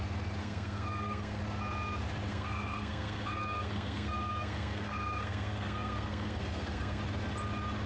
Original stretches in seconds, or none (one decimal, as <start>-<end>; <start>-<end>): 0.0-0.4; 1.4-2.3; 7.0-7.9